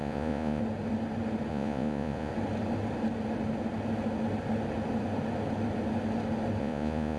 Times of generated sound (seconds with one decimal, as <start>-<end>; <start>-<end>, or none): 0.0-0.6; 1.5-2.3; 6.6-7.2

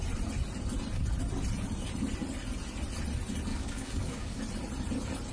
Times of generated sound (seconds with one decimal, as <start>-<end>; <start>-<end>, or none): 3.5-4.4

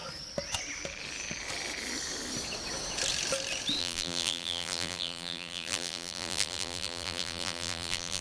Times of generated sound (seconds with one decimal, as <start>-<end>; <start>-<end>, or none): 3.8-8.2

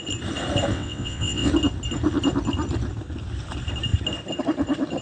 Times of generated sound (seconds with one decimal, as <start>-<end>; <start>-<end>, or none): 0.7-1.5

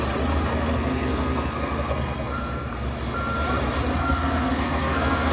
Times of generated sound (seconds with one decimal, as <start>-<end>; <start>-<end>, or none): 0.5-2.7; 4.0-5.3

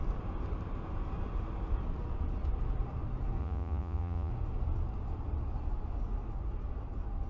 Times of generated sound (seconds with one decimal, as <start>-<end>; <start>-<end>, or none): 3.4-4.3